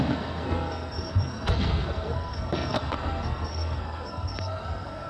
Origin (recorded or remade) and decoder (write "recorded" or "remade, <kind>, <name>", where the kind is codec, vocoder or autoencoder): remade, codec, SNAC